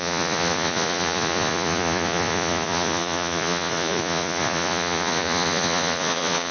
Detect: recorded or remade remade